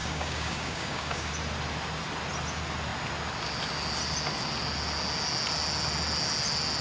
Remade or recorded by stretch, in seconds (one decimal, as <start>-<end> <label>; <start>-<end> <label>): 0.0-1.3 remade; 1.3-6.8 recorded